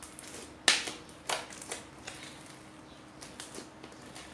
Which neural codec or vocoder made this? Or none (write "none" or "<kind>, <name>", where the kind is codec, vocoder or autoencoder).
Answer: none